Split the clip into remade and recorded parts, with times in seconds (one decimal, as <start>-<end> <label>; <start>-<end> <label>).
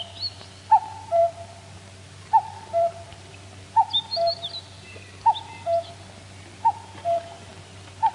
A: 0.0-8.1 recorded